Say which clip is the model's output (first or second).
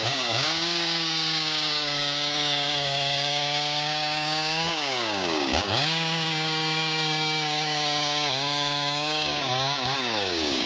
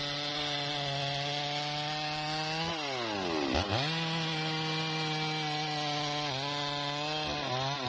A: first